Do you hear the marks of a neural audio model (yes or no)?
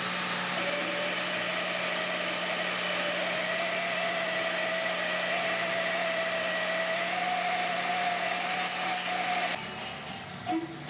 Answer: no